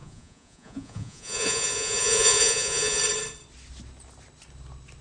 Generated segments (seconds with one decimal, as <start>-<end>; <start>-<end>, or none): 0.0-3.0